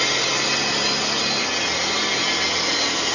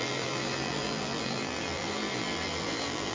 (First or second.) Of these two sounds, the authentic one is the first